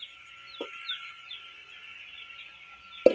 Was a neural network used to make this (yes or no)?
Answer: no